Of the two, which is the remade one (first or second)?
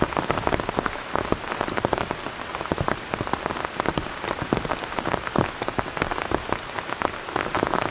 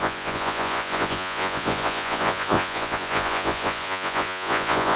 second